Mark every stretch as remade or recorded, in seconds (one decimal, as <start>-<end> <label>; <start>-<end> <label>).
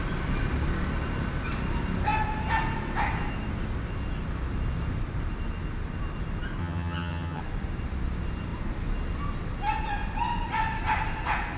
0.0-6.6 recorded; 6.6-7.4 remade; 7.4-11.6 recorded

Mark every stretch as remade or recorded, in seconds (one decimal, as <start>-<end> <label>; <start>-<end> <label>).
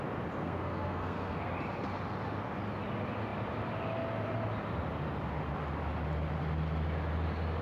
0.0-0.4 recorded; 0.4-1.5 remade; 1.5-7.6 recorded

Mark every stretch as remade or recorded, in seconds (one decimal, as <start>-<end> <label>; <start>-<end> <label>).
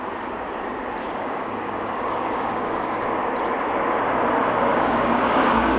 0.0-1.0 recorded; 1.0-3.3 remade; 3.3-4.7 recorded; 4.7-5.8 remade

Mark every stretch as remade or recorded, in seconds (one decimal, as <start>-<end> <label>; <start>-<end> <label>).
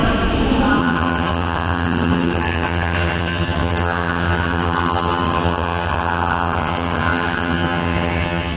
0.0-0.8 recorded; 0.8-8.6 remade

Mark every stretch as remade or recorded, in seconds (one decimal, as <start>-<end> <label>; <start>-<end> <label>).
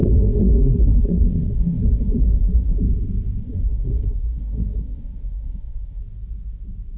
0.0-2.8 remade; 2.8-3.4 recorded; 3.4-6.0 remade; 6.0-7.0 recorded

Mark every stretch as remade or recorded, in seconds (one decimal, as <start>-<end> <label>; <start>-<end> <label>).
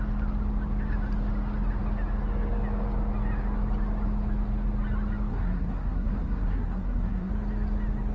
0.0-5.3 recorded; 5.3-7.3 remade; 7.3-8.1 recorded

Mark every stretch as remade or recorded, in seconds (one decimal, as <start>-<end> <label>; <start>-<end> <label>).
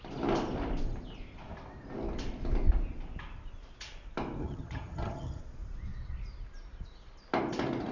0.0-4.4 recorded; 4.4-5.4 remade; 5.4-7.9 recorded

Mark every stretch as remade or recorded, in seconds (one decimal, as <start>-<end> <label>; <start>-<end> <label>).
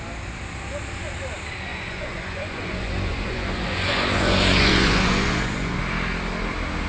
0.0-1.7 recorded; 1.7-5.8 remade; 5.8-6.9 recorded